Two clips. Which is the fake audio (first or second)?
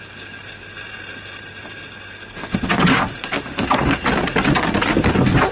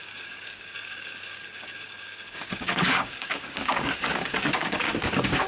second